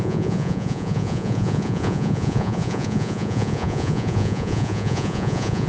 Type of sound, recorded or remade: remade